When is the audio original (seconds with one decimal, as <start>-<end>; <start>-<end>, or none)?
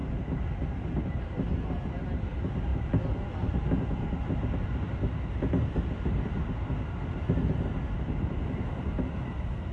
0.0-9.7